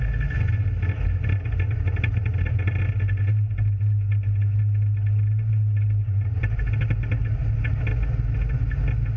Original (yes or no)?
yes